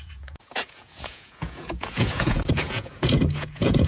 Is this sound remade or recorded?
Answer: remade